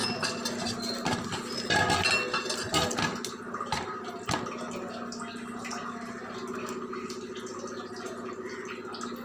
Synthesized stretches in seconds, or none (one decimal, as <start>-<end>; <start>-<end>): none